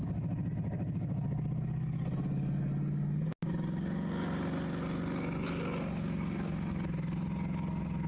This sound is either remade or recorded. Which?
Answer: recorded